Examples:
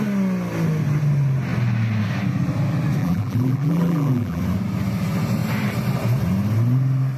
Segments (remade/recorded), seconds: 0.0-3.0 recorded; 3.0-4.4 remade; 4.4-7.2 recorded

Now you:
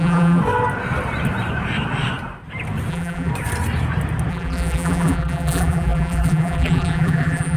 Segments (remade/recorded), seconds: 0.0-0.4 remade; 0.4-2.9 recorded; 2.9-3.3 remade; 3.3-4.3 recorded; 4.3-7.6 remade

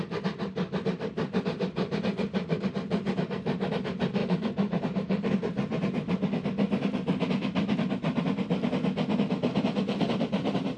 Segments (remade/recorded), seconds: 0.0-5.7 remade; 5.7-10.0 recorded; 10.0-10.8 remade

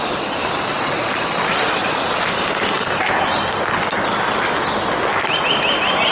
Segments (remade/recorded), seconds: 0.0-1.8 recorded; 1.8-3.4 remade; 3.4-6.1 recorded

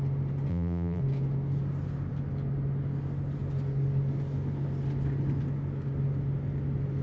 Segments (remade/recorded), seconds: 0.0-0.5 recorded; 0.5-1.0 remade; 1.0-7.0 recorded

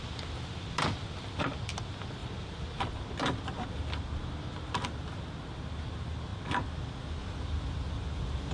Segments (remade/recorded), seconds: 0.0-8.5 recorded

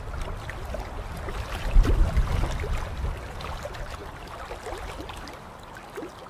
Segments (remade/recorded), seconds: 0.0-6.3 recorded

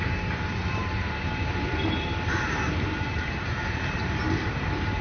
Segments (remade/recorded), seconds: 0.0-5.0 remade